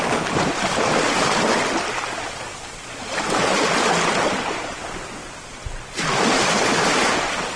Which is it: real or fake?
real